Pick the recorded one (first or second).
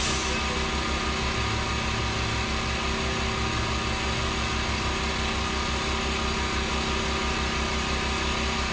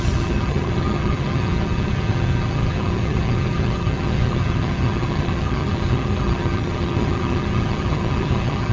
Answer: first